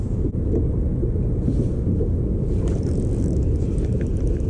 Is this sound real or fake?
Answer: real